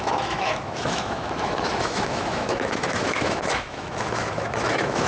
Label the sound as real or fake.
fake